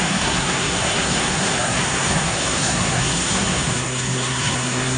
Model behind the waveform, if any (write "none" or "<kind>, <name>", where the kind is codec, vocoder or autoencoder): codec, SNAC